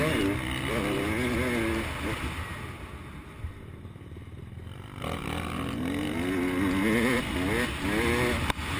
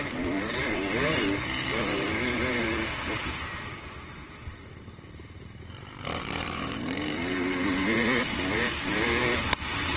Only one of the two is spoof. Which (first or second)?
second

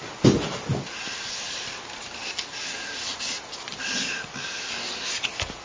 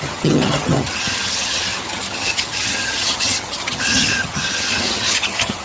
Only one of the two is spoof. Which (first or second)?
second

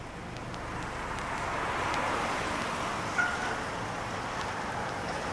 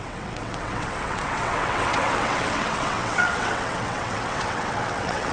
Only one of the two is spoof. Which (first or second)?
second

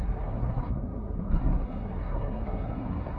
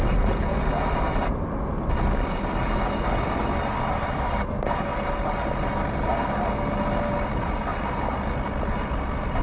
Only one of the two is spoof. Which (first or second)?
first